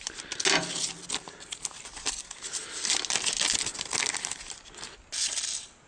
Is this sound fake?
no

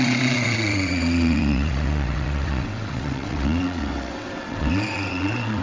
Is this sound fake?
yes